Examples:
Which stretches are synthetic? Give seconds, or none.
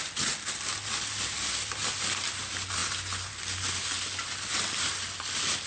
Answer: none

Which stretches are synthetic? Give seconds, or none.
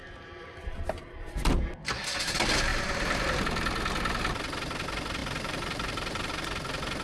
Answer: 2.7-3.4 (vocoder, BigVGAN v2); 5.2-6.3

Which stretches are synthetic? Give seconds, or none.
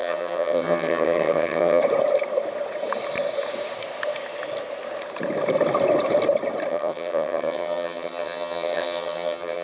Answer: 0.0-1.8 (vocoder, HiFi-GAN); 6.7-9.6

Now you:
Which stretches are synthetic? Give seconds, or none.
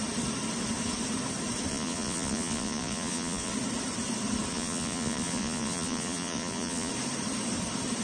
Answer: 1.7-3.5 (vocoder, Vocos); 4.5-6.9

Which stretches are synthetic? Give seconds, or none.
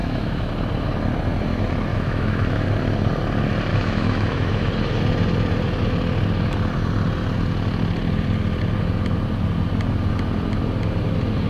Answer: 0.0-0.5 (autoencoder, DAC-VAE); 1.9-2.7; 3.7-4.7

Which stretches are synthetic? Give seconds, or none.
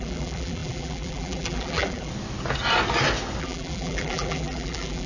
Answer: 0.0-2.1 (vocoder, BigVGAN v2); 3.4-5.1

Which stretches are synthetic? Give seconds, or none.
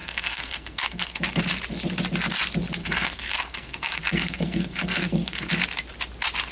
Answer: 0.0-1.4 (codec, SNAC); 2.8-5.5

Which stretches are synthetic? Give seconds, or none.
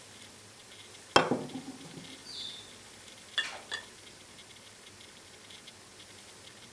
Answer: none